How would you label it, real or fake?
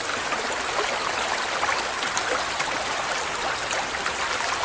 real